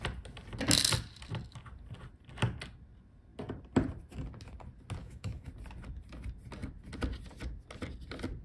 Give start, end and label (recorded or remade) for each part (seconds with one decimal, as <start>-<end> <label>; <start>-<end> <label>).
0.0-5.0 recorded; 5.0-5.5 remade; 5.5-8.4 recorded